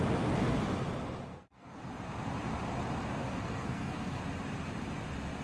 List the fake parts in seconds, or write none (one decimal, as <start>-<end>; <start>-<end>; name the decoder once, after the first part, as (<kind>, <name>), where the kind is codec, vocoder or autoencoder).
1.3-1.8 (codec, SNAC); 3.2-4.2